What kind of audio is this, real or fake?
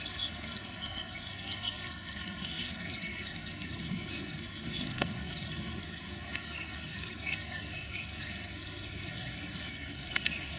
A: fake